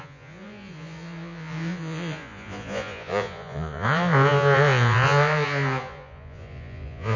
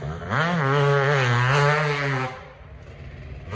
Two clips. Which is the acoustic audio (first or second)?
second